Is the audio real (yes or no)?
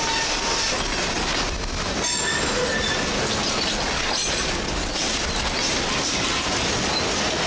yes